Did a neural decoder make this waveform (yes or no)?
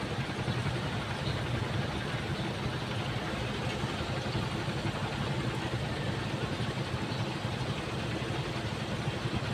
no